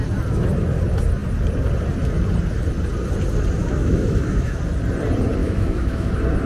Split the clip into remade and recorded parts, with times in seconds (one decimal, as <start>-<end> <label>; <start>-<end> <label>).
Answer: 0.0-3.6 recorded; 3.6-4.6 remade; 4.6-5.4 recorded; 5.4-6.1 remade; 6.1-6.5 recorded

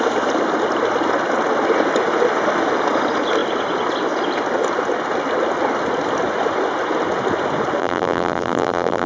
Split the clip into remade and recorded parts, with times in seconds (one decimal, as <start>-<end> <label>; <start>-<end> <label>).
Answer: 0.0-7.8 recorded; 7.8-9.1 remade

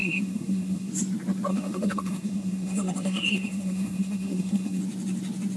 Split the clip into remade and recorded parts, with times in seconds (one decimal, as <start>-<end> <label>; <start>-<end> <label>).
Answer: 0.0-0.9 remade; 0.9-1.5 recorded; 1.5-4.8 remade; 4.8-5.6 recorded

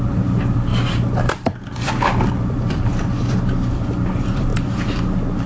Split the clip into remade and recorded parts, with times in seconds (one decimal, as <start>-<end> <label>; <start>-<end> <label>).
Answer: 0.0-2.9 remade; 2.9-4.1 recorded; 4.1-4.5 remade; 4.5-5.5 recorded

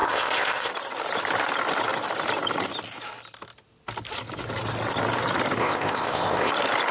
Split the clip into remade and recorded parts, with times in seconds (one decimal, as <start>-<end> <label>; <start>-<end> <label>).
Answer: 0.0-0.7 remade; 0.7-5.6 recorded; 5.6-6.5 remade; 6.5-6.9 recorded

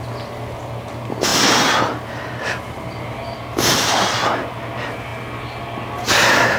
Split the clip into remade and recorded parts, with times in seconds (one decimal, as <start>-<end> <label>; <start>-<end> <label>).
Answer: 0.0-6.6 recorded

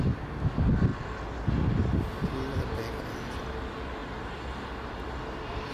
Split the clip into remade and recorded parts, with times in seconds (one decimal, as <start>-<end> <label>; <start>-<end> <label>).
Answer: 0.0-5.7 recorded

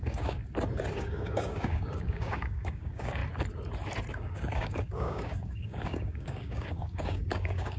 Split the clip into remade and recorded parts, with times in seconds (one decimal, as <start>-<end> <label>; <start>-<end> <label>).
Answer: 0.0-0.4 remade; 0.4-0.9 recorded; 0.9-3.2 remade; 3.2-4.1 recorded; 4.1-7.8 remade